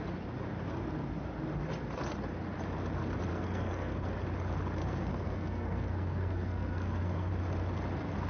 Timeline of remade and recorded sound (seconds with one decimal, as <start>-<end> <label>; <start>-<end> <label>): 0.0-3.3 recorded; 3.3-4.1 remade; 4.1-4.8 recorded; 4.8-7.3 remade; 7.3-8.3 recorded